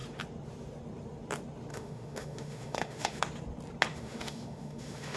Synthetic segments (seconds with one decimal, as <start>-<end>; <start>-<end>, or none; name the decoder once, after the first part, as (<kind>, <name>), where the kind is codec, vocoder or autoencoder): 1.7-3.2 (autoencoder, DAC-VAE); 3.9-5.2